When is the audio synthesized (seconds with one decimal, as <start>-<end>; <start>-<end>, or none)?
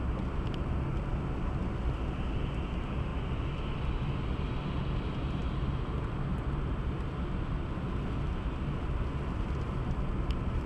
none